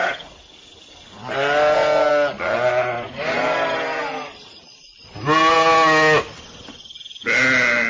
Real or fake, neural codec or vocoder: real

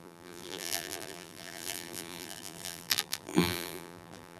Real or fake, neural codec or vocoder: fake, vocoder, BigVGAN v2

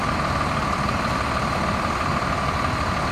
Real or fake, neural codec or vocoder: real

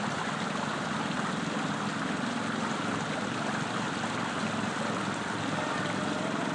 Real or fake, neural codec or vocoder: real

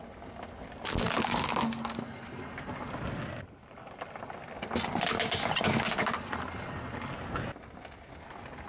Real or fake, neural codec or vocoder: real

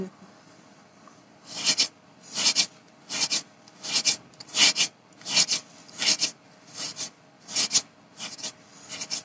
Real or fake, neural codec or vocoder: real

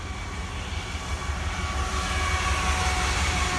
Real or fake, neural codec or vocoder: real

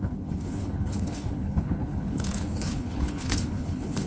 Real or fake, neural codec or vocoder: fake, codec, HILCodec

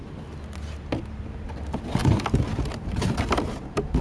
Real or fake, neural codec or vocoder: real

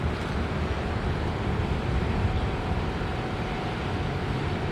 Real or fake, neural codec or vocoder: real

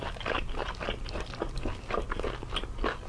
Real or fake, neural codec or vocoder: real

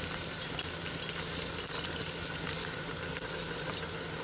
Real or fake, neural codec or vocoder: fake, vocoder, BigVGAN v2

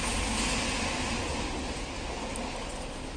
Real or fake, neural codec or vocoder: real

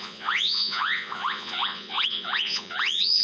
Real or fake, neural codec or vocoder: fake, vocoder, Vocos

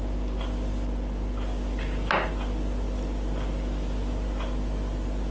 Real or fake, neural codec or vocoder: real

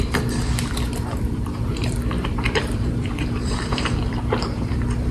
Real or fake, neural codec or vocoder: fake, vocoder, BigVGAN v2